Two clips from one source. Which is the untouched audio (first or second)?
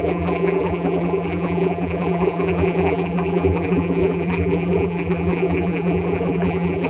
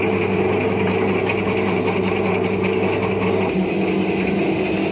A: second